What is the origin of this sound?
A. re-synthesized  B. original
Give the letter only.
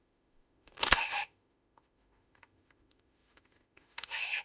A